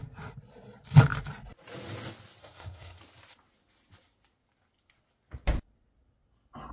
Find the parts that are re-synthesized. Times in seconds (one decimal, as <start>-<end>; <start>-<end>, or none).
2.4-3.0